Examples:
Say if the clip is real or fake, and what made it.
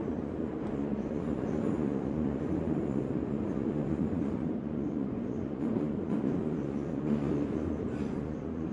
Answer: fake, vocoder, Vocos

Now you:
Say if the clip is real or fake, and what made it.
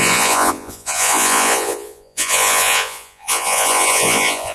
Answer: fake, vocoder, Vocos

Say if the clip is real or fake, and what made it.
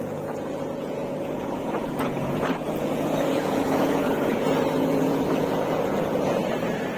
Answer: fake, vocoder, Vocos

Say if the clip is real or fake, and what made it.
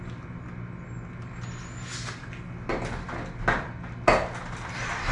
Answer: real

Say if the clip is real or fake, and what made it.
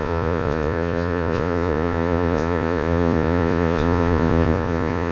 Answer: fake, vocoder, Vocos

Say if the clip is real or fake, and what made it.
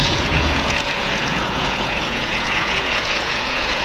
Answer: fake, vocoder, Vocos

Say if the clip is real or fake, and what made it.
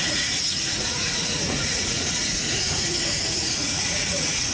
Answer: fake, vocoder, Vocos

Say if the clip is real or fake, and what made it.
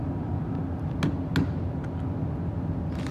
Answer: real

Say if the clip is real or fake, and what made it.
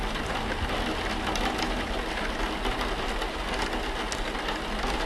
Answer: real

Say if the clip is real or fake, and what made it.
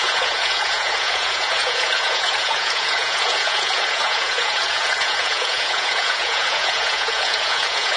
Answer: fake, vocoder, Vocos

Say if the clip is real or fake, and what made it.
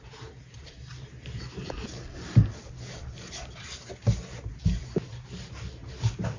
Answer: real